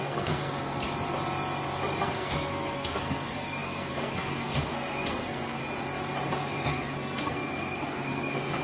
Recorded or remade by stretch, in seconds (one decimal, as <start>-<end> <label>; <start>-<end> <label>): 0.0-0.8 remade; 0.8-2.0 recorded; 2.0-5.6 remade; 5.6-6.3 recorded; 6.3-8.6 remade